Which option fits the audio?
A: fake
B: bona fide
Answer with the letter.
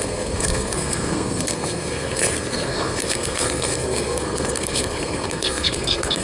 A